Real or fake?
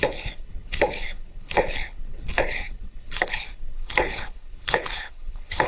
fake